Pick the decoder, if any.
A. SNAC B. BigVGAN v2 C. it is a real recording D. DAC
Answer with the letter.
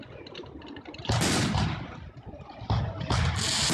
C